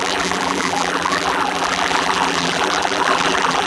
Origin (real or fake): fake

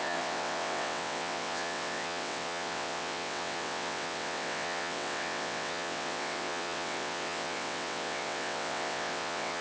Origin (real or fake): fake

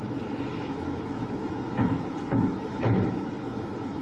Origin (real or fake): fake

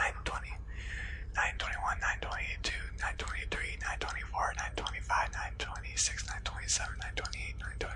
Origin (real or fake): fake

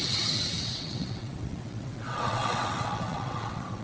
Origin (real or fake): fake